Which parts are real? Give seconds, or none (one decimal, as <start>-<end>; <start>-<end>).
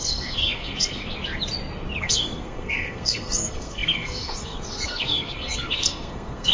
1.0-2.0